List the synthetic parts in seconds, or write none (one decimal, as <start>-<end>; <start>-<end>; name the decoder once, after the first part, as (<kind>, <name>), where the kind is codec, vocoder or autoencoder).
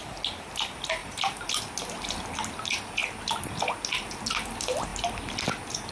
none